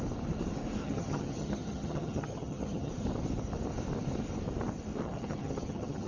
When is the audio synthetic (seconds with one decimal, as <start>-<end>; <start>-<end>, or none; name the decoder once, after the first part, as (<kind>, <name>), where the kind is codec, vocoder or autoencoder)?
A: 0.8-2.9 (vocoder, HiFi-GAN); 5.0-6.1